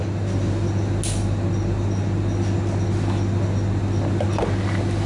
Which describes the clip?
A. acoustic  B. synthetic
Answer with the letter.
A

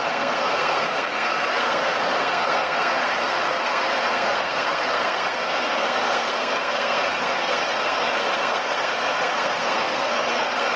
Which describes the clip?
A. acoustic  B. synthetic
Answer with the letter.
B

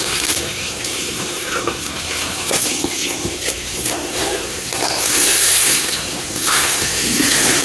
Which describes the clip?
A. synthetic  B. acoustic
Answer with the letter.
A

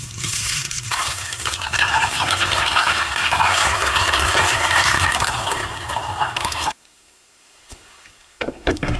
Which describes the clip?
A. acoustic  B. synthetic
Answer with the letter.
B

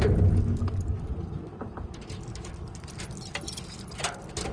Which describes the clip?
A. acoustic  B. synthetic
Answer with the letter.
A